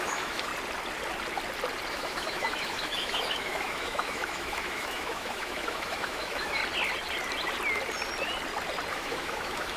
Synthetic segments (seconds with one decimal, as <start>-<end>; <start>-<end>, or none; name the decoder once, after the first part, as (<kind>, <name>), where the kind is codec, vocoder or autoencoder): 0.0-0.5 (autoencoder, DAC-VAE); 1.9-6.6; 8.9-9.8